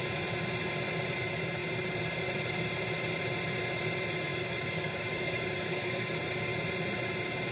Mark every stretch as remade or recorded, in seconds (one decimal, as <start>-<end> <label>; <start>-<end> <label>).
0.0-4.3 recorded; 4.3-6.1 remade; 6.1-7.5 recorded